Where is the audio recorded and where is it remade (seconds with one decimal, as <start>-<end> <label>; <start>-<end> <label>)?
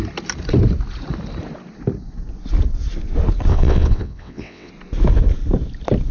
0.0-3.5 recorded; 3.5-4.7 remade; 4.7-6.1 recorded